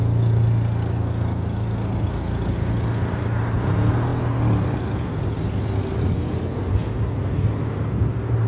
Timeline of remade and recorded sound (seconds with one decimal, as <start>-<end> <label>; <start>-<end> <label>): 0.0-8.5 recorded